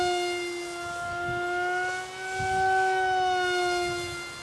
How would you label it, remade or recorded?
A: recorded